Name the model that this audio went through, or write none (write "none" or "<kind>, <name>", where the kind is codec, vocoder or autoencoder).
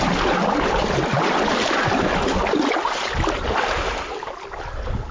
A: none